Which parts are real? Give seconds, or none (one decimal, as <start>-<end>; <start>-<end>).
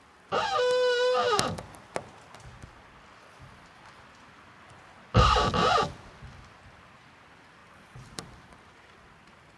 0.0-7.6; 8.6-9.6